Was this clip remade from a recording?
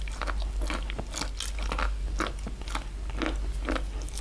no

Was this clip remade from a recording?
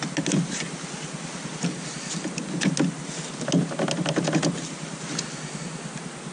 no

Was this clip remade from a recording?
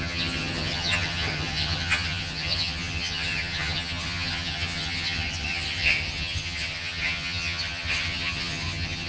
yes